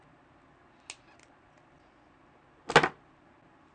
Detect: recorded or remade recorded